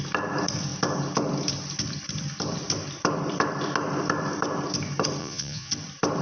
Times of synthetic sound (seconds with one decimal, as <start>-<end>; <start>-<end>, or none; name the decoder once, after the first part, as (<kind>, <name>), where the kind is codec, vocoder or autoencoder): 5.2-5.7 (vocoder, Vocos)